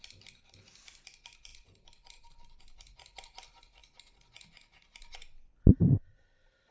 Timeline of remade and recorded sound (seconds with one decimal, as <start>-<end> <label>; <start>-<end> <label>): 0.0-6.7 recorded